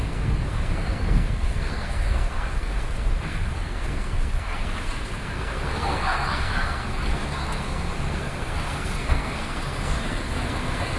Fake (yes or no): yes